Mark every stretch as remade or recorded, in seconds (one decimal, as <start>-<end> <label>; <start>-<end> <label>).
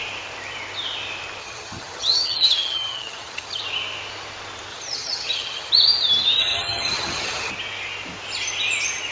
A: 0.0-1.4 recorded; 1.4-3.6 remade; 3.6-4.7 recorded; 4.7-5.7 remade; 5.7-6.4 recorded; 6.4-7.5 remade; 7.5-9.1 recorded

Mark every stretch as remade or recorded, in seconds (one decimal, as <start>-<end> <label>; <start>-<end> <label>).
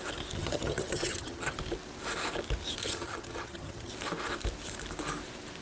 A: 0.0-0.4 recorded; 0.4-1.6 remade; 1.6-2.8 recorded; 2.8-3.9 remade; 3.9-5.6 recorded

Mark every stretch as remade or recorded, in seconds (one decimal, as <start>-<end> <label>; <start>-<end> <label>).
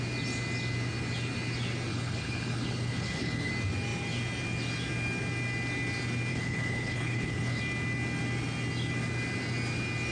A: 0.0-1.9 recorded; 1.9-3.5 remade; 3.5-6.3 recorded; 6.3-7.6 remade; 7.6-10.1 recorded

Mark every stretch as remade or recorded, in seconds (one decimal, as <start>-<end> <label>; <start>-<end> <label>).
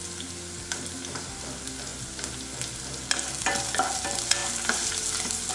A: 0.0-5.5 recorded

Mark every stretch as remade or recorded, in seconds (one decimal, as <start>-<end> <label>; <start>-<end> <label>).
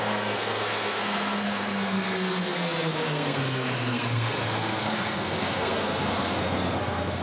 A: 0.0-7.2 remade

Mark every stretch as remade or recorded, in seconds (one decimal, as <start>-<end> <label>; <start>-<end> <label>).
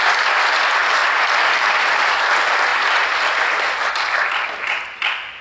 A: 0.0-1.0 remade; 1.0-1.5 recorded; 1.5-5.4 remade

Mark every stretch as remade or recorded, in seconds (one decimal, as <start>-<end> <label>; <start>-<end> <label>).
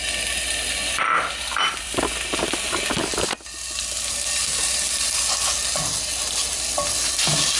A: 0.0-7.6 recorded